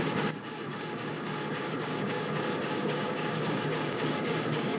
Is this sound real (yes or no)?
no